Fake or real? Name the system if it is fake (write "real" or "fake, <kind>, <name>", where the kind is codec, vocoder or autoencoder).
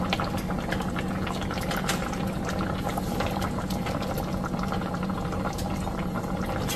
real